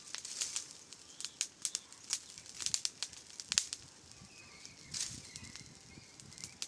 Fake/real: real